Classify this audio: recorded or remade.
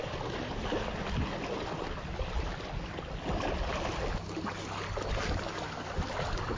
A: recorded